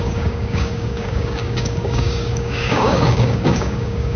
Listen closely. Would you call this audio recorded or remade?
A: remade